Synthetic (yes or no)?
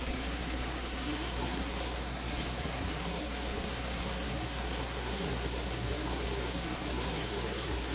yes